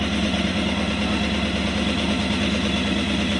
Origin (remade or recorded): recorded